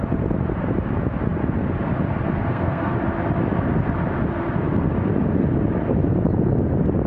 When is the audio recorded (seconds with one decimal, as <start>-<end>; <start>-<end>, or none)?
0.0-2.4; 2.9-7.1